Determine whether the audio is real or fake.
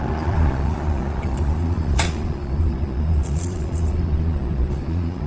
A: fake